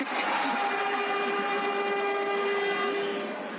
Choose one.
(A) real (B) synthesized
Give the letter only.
A